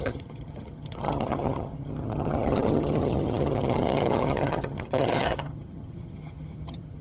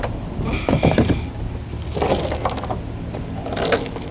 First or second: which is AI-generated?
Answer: first